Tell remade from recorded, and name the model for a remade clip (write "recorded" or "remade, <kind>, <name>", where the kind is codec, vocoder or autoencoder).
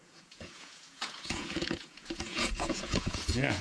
remade, vocoder, Vocos